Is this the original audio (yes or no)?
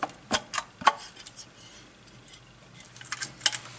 yes